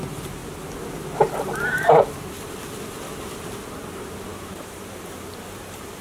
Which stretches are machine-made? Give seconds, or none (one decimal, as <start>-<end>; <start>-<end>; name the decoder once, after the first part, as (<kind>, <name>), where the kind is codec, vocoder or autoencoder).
0.0-0.4 (vocoder, BigVGAN v2); 3.7-6.0

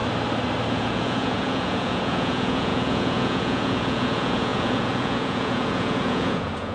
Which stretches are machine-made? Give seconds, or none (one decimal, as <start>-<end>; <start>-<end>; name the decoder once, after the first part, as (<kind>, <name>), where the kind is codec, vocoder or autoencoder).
0.7-6.7 (vocoder, Vocos)

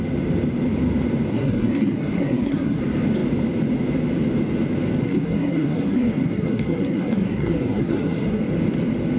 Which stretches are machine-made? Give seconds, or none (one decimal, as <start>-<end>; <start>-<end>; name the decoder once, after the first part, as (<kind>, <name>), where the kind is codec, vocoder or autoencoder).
1.3-2.8 (codec, SNAC); 5.0-8.4